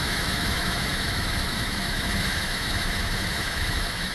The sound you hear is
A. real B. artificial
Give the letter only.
B